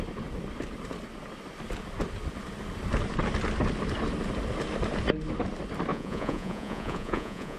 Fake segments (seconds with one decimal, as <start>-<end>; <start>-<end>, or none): 5.9-7.6